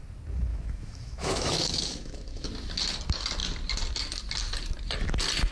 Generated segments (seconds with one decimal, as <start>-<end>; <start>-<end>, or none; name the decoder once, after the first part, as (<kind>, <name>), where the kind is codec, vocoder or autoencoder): 0.5-2.5 (autoencoder, DAC-VAE)